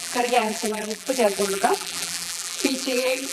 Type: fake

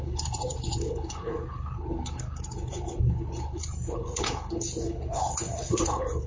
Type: fake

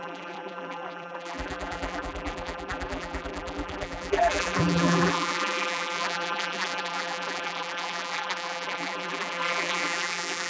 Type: fake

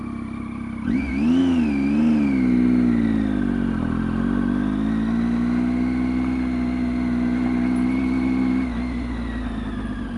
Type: real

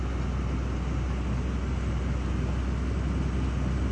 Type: real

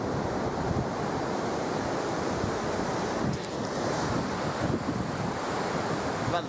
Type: real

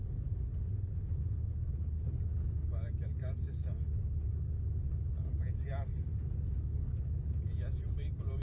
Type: real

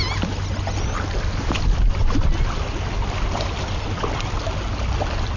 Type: real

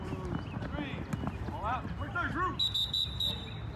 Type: real